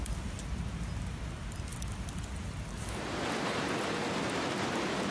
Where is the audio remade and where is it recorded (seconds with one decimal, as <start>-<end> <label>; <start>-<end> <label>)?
0.0-5.1 recorded